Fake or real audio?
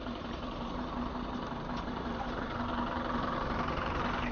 fake